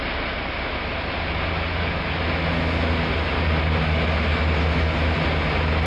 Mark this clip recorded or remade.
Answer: recorded